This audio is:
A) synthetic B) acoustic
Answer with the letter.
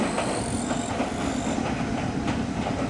B